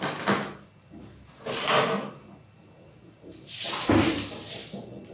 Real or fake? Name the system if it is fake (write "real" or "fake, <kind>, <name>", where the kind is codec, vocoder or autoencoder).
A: real